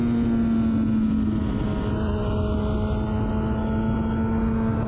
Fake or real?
real